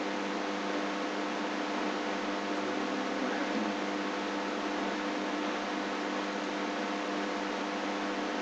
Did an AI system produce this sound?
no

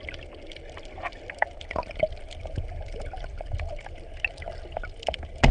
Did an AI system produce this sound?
no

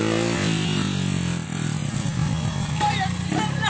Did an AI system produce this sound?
no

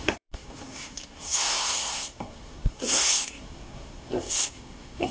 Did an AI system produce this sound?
yes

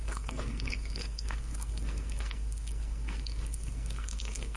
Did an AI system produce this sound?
yes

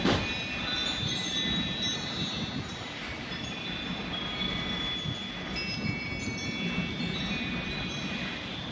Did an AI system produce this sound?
no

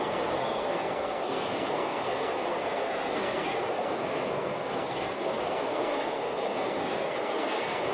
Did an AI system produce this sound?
yes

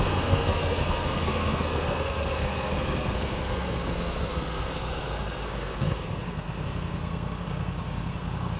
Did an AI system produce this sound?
yes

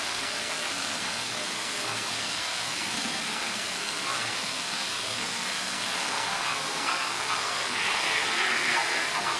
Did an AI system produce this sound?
yes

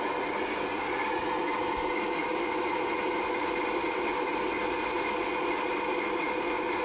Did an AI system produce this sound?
no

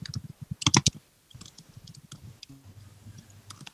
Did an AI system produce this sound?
no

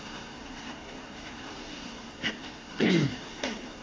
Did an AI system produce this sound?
yes